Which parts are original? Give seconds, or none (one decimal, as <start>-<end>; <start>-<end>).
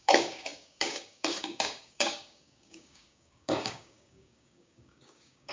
none